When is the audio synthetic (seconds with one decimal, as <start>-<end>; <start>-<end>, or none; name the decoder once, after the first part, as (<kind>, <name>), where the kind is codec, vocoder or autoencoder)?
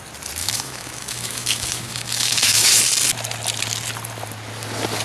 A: 0.4-2.8 (autoencoder, DAC-VAE)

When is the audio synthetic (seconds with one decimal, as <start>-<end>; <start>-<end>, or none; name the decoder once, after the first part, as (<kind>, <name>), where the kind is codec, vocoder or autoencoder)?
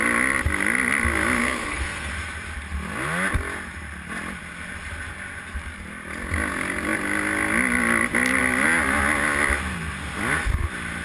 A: 1.4-2.1 (codec, SNAC)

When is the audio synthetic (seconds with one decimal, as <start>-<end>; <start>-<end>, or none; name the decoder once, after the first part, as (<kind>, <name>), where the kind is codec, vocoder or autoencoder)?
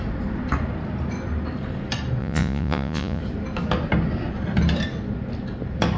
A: 2.2-3.2 (vocoder, Vocos)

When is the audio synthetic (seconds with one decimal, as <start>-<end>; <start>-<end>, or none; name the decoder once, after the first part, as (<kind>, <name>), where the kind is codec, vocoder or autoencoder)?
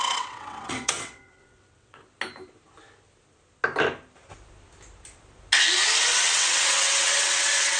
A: 0.0-2.0 (vocoder, WaveNeXt); 6.0-7.8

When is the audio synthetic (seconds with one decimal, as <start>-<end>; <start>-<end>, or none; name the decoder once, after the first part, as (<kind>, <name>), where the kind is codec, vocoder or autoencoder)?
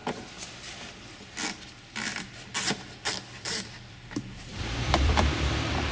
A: 2.1-5.9 (vocoder, BigVGAN v2)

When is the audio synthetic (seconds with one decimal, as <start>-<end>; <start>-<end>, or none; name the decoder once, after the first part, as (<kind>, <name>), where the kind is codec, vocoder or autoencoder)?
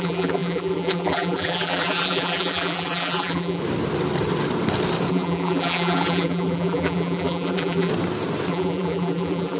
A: 0.0-3.6 (vocoder, BigVGAN v2); 5.1-7.9; 8.5-9.6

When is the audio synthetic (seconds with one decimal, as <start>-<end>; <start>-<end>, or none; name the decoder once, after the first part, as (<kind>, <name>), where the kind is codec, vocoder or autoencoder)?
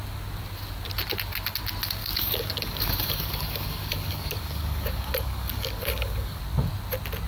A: 2.0-6.4 (codec, DAC)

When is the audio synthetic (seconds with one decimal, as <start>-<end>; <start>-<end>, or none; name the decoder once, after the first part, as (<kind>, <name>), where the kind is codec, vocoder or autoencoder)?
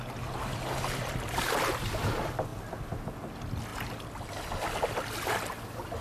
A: none